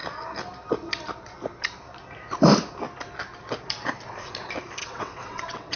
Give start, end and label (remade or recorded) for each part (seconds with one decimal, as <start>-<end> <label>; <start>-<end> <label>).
0.0-4.8 recorded; 4.8-5.8 remade